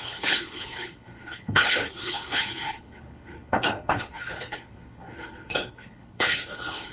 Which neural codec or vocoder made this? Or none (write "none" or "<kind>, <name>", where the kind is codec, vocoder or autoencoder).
codec, HILCodec